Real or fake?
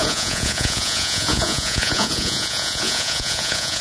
fake